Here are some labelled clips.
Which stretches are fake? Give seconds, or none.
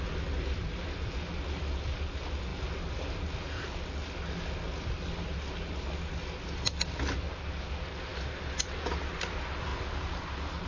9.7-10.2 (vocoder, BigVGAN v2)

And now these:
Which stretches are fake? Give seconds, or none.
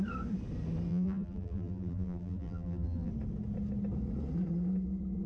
0.9-3.1 (vocoder, BigVGAN v2)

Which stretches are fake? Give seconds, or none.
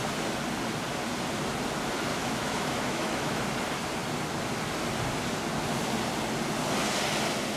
2.1-3.4 (autoencoder, DAC-VAE)